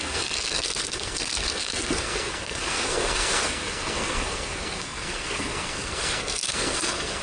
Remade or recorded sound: remade